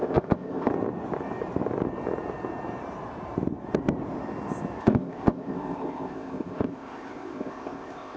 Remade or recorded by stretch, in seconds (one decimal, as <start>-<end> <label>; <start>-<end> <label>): 0.0-0.7 remade; 0.7-4.8 recorded; 4.8-8.2 remade